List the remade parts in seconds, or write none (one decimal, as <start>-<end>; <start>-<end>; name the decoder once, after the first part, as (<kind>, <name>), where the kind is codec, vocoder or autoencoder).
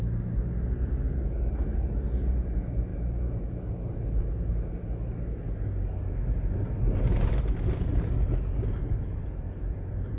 none